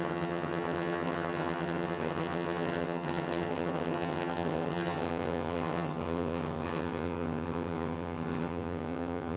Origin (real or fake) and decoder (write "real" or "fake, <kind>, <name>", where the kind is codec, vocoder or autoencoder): fake, vocoder, HiFi-GAN